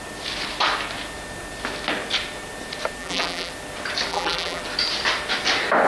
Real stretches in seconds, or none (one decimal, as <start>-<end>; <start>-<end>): 0.0-3.0; 3.5-4.1; 4.6-5.9